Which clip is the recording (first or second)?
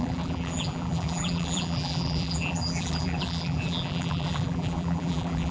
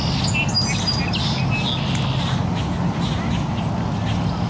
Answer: second